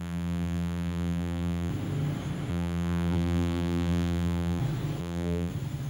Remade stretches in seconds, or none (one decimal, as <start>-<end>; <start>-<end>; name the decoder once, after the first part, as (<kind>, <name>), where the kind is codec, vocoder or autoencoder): 0.0-1.7 (vocoder, BigVGAN v2); 2.5-4.6; 5.0-5.5